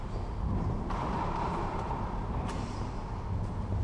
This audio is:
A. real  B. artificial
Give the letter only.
B